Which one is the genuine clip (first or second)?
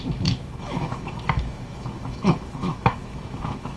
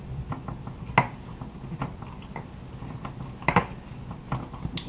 second